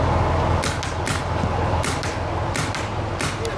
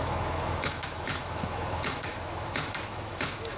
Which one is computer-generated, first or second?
second